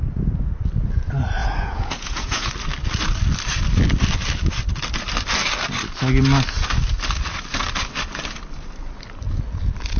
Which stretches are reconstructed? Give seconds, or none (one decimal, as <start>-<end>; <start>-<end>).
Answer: 1.4-2.5

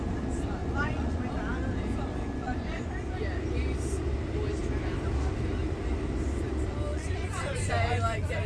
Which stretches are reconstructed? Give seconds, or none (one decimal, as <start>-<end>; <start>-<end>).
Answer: 0.6-1.2; 2.4-2.9; 6.9-7.7